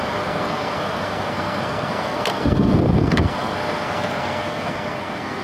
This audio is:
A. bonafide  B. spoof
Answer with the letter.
B